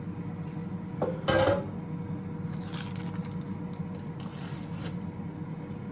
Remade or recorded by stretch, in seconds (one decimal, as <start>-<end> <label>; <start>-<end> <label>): 0.0-5.9 recorded